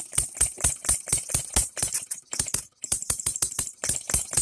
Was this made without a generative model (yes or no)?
no